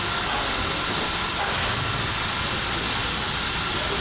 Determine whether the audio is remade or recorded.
recorded